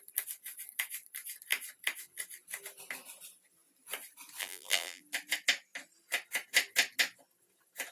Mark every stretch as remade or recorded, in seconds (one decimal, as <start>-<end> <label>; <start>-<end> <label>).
0.0-4.4 recorded; 4.4-5.0 remade; 5.0-7.9 recorded